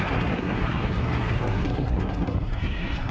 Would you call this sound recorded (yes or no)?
no